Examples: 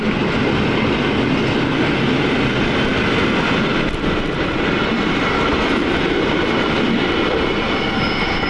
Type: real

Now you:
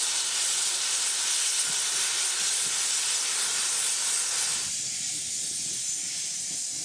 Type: real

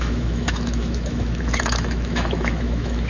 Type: fake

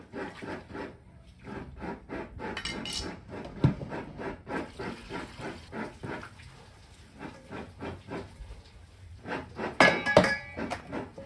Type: real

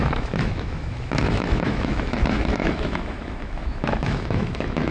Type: fake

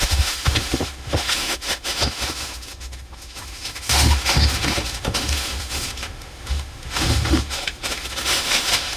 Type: fake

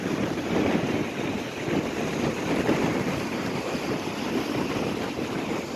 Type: real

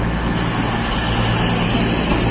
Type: real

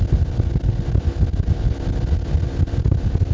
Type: real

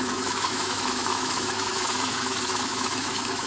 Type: fake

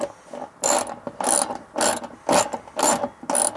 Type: real